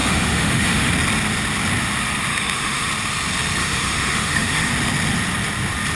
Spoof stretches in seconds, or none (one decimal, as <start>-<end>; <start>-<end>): 0.0-0.9; 2.3-2.9; 3.6-4.7